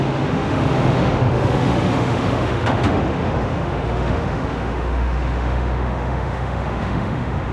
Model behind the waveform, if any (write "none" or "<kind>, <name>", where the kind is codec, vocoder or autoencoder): autoencoder, DAC-VAE